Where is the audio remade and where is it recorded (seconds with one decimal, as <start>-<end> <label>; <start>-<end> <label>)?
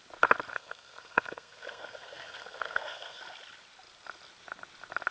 0.0-0.5 recorded; 0.5-3.2 remade; 3.2-5.1 recorded